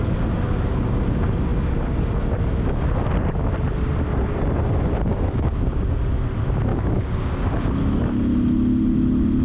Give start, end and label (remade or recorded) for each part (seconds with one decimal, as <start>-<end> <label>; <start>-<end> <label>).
0.0-5.1 recorded; 5.1-6.3 remade; 6.3-6.7 recorded; 6.7-7.7 remade; 7.7-9.4 recorded